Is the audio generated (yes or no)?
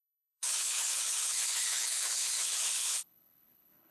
yes